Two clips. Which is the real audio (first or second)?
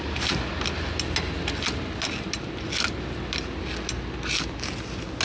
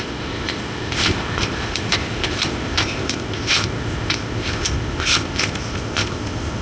first